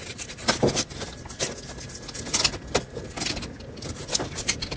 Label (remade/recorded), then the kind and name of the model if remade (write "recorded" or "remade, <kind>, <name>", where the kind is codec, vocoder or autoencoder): recorded